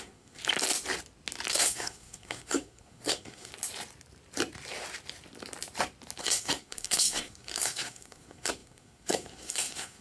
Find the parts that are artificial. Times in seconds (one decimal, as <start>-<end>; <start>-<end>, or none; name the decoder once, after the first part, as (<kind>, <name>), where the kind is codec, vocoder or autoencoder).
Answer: 0.0-0.4 (codec, SNAC); 1.5-3.5; 6.2-10.0